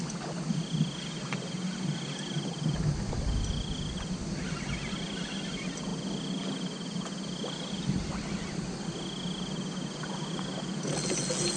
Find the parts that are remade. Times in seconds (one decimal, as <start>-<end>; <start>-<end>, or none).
none